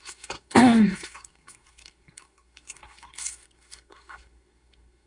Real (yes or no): no